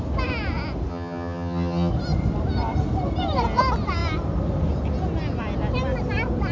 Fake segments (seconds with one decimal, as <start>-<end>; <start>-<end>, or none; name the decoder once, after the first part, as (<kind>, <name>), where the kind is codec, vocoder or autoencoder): 0.9-1.9 (vocoder, HiFi-GAN)

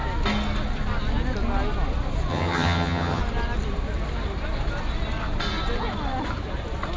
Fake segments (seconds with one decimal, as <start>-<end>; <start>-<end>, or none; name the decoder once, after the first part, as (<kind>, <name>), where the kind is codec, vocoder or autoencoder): 2.3-3.2 (vocoder, HiFi-GAN)

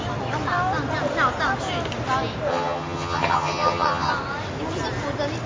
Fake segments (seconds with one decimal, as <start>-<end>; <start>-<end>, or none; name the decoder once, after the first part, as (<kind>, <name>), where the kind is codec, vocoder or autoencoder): 2.5-4.1 (vocoder, HiFi-GAN)

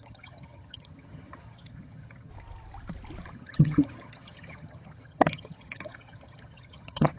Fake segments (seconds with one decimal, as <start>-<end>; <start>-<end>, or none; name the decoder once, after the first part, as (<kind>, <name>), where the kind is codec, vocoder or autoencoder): 0.0-2.3 (vocoder, HiFi-GAN); 3.3-7.2